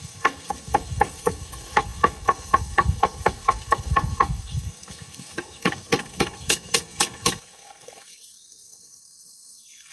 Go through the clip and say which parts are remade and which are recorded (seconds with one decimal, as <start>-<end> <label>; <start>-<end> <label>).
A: 0.0-9.9 remade